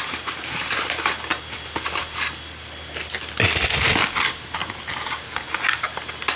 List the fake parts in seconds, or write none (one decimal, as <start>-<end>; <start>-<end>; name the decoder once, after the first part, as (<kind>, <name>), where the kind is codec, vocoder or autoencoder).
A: none